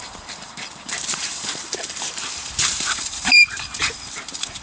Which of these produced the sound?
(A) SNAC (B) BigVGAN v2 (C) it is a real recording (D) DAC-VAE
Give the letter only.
B